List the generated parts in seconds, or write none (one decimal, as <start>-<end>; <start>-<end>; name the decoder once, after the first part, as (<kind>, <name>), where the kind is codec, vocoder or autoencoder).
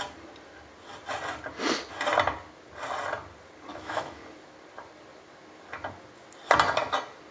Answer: 3.7-4.2 (autoencoder, DAC-VAE)